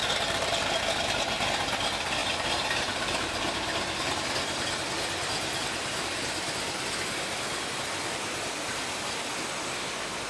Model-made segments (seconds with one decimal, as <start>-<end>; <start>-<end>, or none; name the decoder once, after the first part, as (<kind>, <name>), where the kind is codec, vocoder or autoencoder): 0.0-0.8 (vocoder, BigVGAN v2); 2.2-4.1